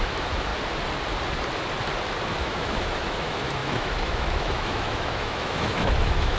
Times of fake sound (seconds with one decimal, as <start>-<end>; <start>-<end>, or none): 0.0-0.5; 2.4-6.4